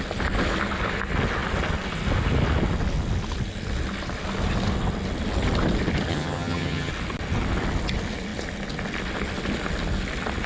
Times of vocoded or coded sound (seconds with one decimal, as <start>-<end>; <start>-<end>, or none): 6.1-6.9